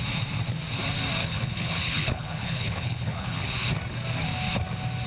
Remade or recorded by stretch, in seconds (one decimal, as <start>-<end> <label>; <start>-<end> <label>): 0.0-1.2 recorded; 1.2-3.5 remade; 3.5-5.1 recorded